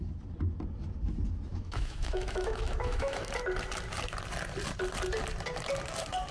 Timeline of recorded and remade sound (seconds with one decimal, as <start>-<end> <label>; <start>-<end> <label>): 0.0-1.5 recorded; 1.5-3.3 remade; 3.3-6.3 recorded